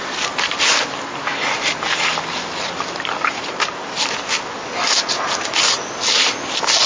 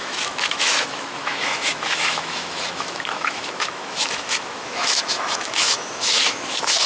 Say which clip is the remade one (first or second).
second